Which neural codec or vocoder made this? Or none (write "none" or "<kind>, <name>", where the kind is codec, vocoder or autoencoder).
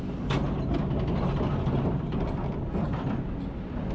none